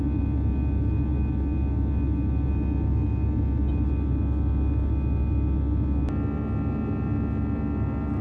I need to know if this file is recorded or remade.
recorded